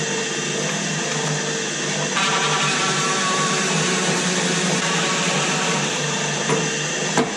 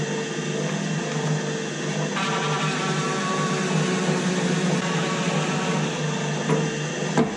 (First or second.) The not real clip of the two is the first